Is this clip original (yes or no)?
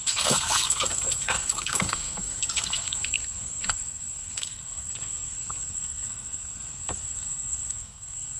no